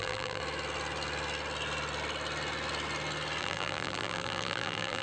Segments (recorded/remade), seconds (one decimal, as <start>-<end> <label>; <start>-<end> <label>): 0.0-0.4 remade; 0.4-3.4 recorded; 3.4-5.0 remade

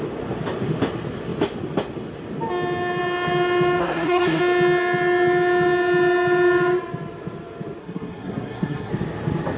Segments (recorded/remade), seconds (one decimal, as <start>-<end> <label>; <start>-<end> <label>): 0.0-3.8 recorded; 3.8-4.4 remade; 4.4-7.8 recorded; 7.8-8.9 remade; 8.9-9.6 recorded

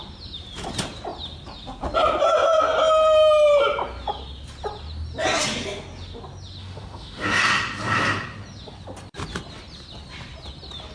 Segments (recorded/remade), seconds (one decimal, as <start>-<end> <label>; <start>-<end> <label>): 0.0-6.6 recorded; 6.6-7.4 remade; 7.4-10.9 recorded

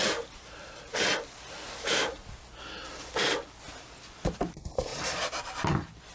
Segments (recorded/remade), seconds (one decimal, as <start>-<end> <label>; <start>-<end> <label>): 0.0-6.1 recorded

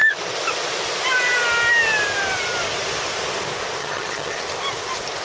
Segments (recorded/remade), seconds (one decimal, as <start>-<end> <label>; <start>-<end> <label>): 0.0-3.8 recorded; 3.8-4.4 remade; 4.4-5.2 recorded

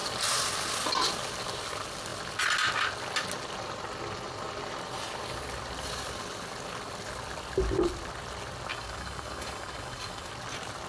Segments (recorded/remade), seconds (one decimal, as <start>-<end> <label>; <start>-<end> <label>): 0.0-8.7 recorded; 8.7-10.3 remade; 10.3-10.9 recorded